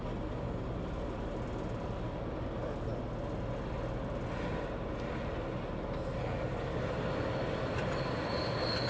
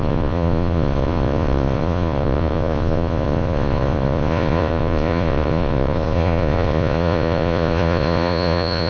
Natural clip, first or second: first